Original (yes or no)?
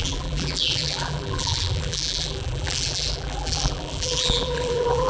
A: no